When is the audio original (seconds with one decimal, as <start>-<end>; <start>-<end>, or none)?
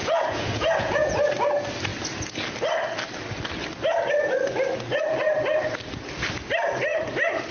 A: 1.3-7.5